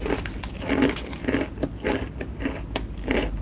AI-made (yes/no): no